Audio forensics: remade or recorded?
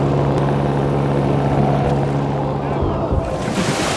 recorded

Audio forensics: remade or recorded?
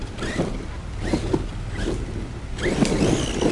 recorded